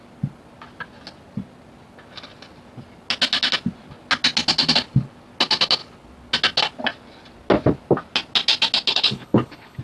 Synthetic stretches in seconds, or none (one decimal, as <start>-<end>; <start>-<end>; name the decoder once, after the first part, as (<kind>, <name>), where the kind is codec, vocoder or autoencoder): 8.9-9.8 (codec, HILCodec)